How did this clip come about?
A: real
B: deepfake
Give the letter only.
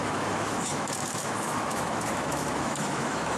B